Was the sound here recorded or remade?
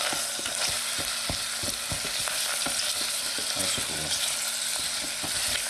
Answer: recorded